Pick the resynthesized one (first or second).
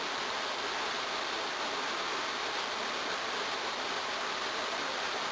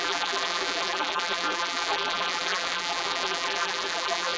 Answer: second